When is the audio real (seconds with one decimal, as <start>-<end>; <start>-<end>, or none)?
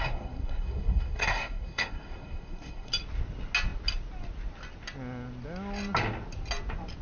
2.9-7.0